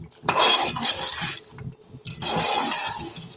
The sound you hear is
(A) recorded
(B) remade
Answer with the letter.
A